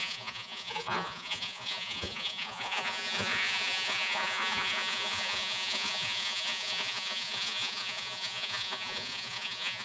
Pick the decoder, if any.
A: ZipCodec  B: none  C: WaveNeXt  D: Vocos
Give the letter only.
D